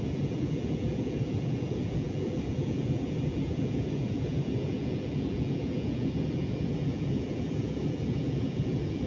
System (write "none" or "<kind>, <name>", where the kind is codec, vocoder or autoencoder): vocoder, Vocos